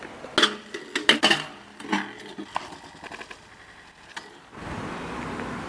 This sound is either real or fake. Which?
real